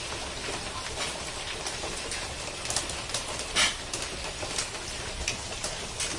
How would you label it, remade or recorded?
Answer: recorded